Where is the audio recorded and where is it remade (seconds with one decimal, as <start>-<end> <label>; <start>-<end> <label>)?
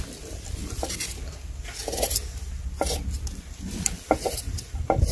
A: 0.0-5.1 recorded